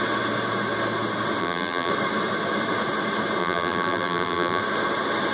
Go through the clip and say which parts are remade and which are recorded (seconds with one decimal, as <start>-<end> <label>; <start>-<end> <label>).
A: 0.0-1.4 recorded; 1.4-1.9 remade; 1.9-3.4 recorded; 3.4-4.6 remade; 4.6-5.3 recorded